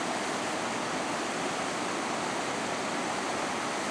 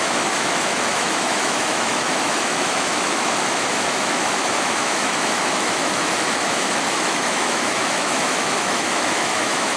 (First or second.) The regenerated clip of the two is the second